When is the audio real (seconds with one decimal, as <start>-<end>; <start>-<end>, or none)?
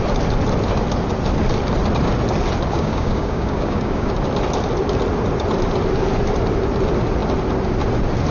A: 0.0-2.7; 4.1-8.3